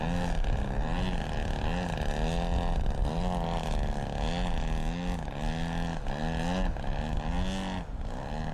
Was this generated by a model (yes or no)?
no